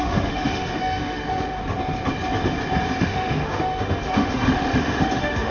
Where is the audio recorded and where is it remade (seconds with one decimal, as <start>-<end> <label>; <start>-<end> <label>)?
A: 0.0-1.6 remade; 1.6-3.0 recorded; 3.0-5.5 remade